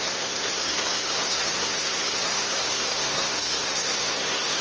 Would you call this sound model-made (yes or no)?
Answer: yes